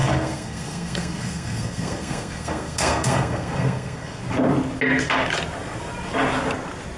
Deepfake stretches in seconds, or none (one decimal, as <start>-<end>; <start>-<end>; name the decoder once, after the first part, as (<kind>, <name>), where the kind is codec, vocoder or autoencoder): 0.0-4.2 (codec, SNAC)